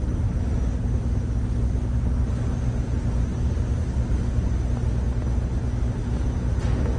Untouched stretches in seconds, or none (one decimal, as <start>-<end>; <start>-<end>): 0.0-3.3; 4.1-7.0